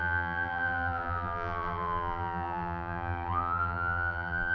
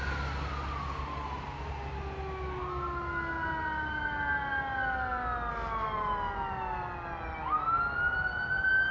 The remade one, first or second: first